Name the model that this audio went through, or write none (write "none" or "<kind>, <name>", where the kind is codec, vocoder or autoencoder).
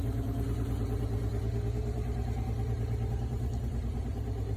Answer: vocoder, BigVGAN v2